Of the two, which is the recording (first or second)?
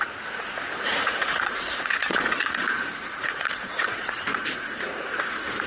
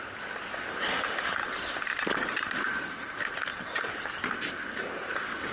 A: second